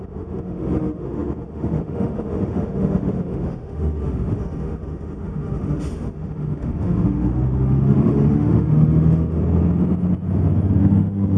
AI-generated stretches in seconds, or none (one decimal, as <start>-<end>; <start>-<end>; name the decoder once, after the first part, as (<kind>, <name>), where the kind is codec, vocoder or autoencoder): 0.0-9.4 (autoencoder, DAC-VAE); 10.8-11.4